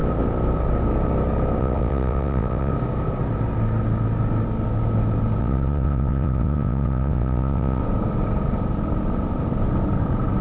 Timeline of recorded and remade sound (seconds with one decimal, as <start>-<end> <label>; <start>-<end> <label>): 0.0-1.6 recorded; 1.6-2.7 remade; 2.7-5.4 recorded; 5.4-7.8 remade; 7.8-10.4 recorded

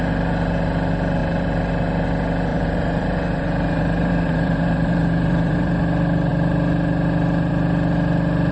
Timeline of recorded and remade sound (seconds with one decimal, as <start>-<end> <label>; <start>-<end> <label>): 0.0-1.2 recorded; 1.2-1.7 remade; 1.7-2.5 recorded; 2.5-5.8 remade; 5.8-8.5 recorded

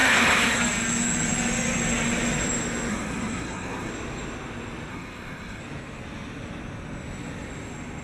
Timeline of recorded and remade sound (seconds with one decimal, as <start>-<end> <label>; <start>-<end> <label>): 0.0-0.6 remade; 0.6-2.9 recorded; 2.9-3.9 remade; 3.9-4.9 recorded; 4.9-5.6 remade; 5.6-8.0 recorded

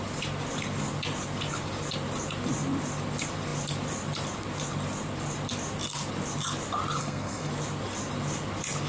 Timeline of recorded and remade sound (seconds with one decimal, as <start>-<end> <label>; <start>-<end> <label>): 0.0-7.0 recorded; 7.0-7.5 remade; 7.5-8.9 recorded

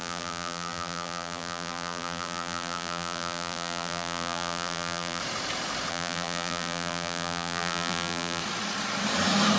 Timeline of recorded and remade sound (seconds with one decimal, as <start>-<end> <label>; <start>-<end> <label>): 0.0-5.2 remade; 5.2-5.9 recorded; 5.9-8.4 remade; 8.4-9.6 recorded